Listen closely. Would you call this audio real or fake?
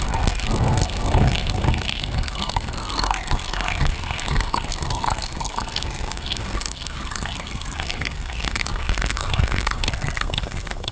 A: fake